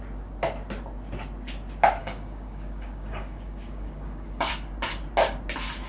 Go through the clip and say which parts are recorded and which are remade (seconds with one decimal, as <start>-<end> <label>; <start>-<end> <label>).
0.0-2.0 recorded; 2.0-4.5 remade; 4.5-5.9 recorded